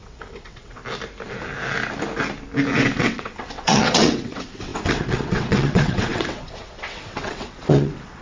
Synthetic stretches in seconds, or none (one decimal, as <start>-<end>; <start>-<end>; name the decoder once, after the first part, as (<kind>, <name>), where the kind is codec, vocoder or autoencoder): 0.0-0.8 (vocoder, WaveNeXt); 3.0-8.2